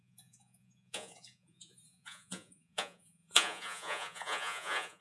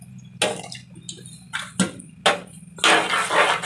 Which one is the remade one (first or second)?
first